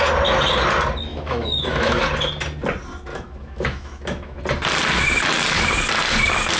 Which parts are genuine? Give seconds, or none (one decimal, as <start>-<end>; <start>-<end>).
0.0-1.1; 2.0-3.1; 4.4-6.6